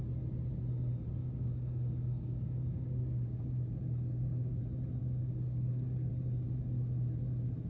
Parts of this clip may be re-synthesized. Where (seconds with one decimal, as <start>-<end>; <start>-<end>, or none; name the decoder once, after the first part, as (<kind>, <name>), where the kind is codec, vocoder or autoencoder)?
1.2-4.6 (codec, DAC); 5.0-6.1